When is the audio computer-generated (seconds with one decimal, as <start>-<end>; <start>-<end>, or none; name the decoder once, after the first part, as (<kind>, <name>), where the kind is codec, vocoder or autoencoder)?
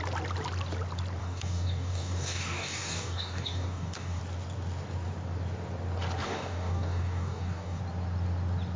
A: 1.2-4.2 (codec, DAC); 6.2-7.8